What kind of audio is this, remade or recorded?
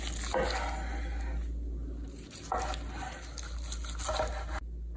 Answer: recorded